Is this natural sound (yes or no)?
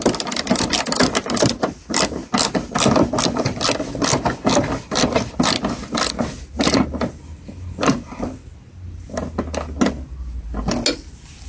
yes